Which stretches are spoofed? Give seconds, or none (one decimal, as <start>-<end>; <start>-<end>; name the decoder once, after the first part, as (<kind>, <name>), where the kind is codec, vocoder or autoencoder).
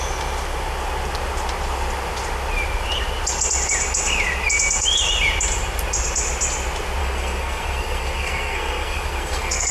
7.0-9.7 (codec, SNAC)